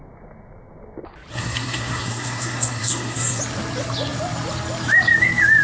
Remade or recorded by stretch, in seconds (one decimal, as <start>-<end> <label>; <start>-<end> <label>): 0.0-1.3 recorded; 1.3-3.4 remade; 3.4-5.6 recorded